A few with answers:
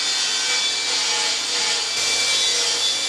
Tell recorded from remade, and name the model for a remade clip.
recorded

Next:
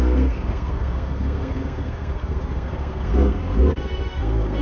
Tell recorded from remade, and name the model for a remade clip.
remade, codec, SNAC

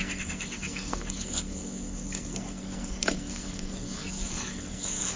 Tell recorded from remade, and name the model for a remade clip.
remade, codec, SNAC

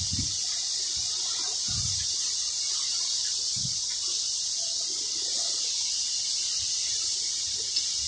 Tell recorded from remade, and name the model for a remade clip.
recorded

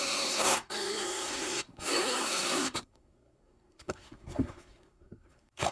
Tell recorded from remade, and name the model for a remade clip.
remade, codec, SNAC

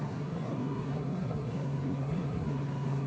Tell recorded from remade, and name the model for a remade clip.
remade, codec, SNAC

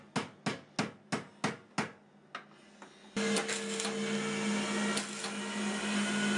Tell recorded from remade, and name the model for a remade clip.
recorded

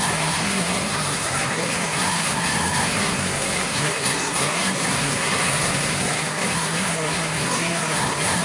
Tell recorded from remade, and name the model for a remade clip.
remade, codec, SNAC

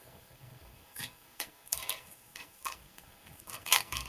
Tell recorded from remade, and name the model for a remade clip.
remade, codec, SNAC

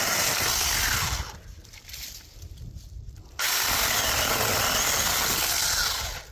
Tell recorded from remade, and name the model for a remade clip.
recorded